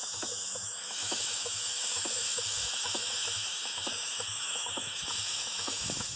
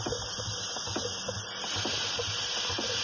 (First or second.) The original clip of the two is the second